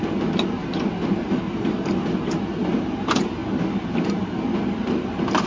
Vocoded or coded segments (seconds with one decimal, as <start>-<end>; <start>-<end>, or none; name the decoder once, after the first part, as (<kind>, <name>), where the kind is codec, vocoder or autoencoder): none